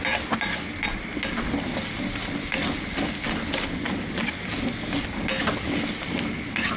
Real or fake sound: real